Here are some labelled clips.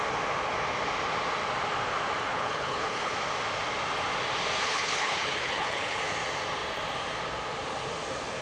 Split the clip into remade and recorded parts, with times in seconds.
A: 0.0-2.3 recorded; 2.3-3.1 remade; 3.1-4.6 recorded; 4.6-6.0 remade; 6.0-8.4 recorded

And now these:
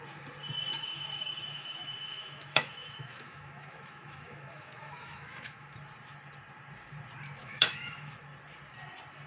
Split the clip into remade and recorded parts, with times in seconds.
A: 0.0-0.7 recorded; 0.7-5.8 remade; 5.8-7.4 recorded; 7.4-8.2 remade; 8.2-9.3 recorded

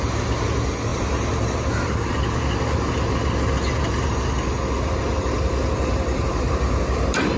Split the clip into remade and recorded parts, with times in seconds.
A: 0.0-5.8 recorded; 5.8-7.4 remade